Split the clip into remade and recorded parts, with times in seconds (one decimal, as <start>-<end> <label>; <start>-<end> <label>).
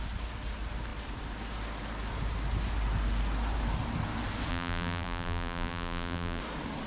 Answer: 0.0-4.5 recorded; 4.5-6.4 remade; 6.4-6.9 recorded